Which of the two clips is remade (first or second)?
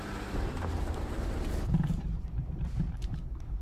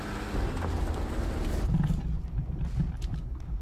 first